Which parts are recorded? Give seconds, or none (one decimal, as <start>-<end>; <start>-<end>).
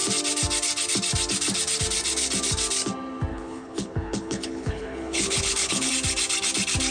0.0-3.3; 5.9-6.9